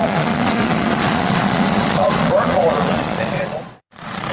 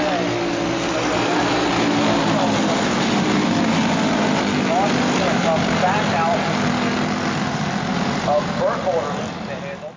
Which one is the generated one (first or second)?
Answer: first